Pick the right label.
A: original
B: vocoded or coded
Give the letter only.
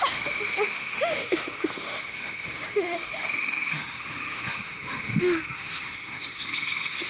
B